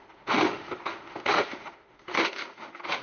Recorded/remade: remade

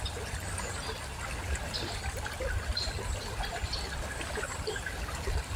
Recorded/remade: recorded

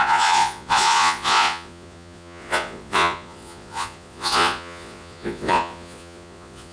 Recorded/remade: remade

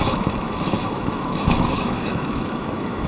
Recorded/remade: remade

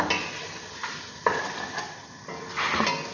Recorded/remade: recorded